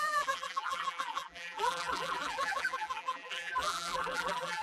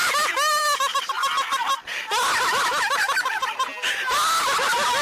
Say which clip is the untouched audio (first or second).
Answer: second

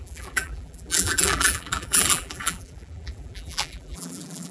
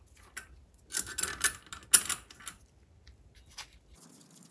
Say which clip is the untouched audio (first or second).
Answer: second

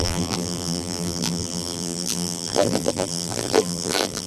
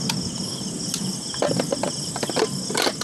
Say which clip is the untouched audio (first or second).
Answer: second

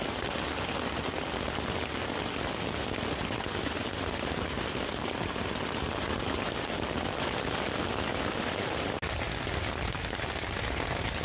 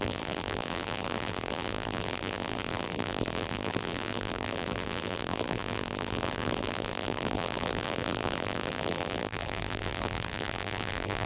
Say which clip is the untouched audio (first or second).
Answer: first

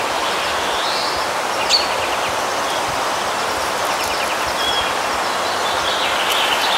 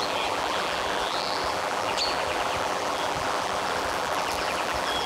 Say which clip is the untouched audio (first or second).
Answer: first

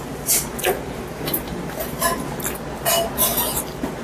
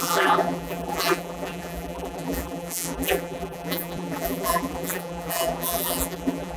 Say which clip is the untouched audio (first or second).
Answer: first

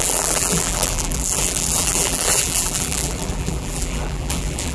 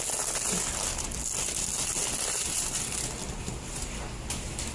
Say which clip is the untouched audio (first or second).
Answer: second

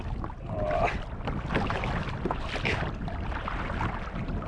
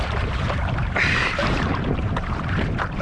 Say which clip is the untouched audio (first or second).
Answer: first